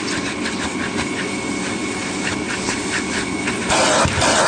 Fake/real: real